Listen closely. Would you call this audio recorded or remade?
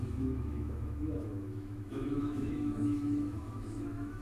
remade